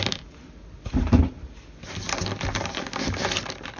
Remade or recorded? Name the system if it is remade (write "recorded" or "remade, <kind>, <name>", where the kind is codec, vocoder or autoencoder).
recorded